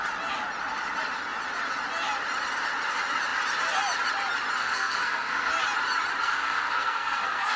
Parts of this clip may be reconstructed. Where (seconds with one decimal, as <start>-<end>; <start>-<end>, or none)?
4.6-5.5; 6.2-7.6

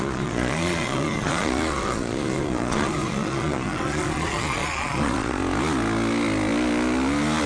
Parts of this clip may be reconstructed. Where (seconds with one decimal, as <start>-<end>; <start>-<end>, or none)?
0.0-5.4

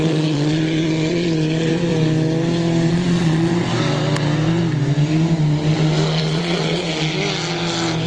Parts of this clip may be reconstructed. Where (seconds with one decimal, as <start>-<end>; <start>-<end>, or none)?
0.0-1.9; 2.9-3.5; 6.2-6.9

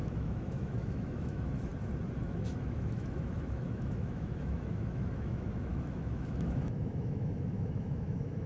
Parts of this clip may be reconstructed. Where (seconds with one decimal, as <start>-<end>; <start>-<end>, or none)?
0.0-1.7; 2.2-8.5

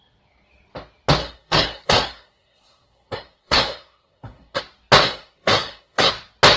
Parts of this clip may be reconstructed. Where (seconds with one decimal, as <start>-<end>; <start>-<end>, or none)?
1.2-4.6; 5.0-6.1